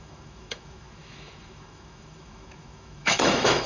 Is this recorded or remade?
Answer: remade